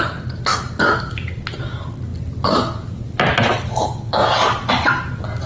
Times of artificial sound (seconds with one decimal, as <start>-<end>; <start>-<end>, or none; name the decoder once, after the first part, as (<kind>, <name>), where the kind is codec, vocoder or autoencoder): none